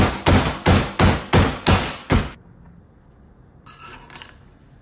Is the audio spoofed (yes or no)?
no